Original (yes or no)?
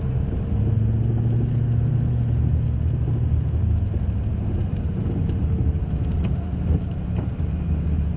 yes